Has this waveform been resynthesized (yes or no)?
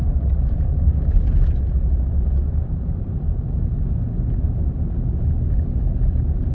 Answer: no